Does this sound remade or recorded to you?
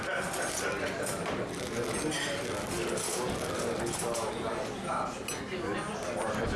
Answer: recorded